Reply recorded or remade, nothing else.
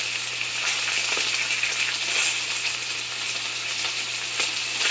recorded